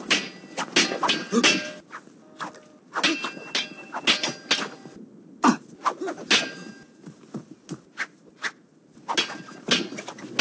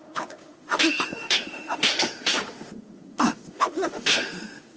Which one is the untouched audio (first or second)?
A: first